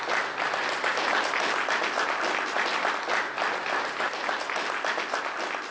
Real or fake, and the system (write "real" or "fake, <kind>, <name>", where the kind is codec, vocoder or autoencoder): real